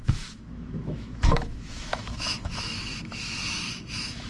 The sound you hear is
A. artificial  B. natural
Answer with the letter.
A